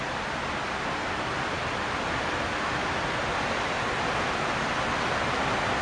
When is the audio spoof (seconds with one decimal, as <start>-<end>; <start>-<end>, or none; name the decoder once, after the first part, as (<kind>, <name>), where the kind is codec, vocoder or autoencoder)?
none